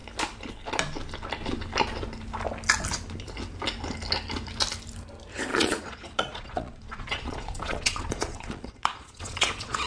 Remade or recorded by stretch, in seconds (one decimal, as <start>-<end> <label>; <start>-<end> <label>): 0.0-5.5 recorded; 5.5-9.9 remade